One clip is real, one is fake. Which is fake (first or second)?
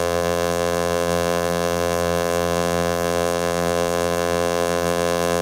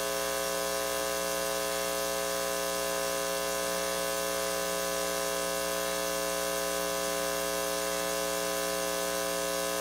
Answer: first